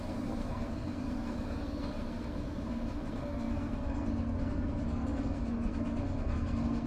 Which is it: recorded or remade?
remade